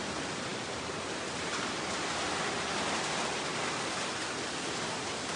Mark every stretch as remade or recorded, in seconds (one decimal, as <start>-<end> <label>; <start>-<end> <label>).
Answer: 0.0-5.4 recorded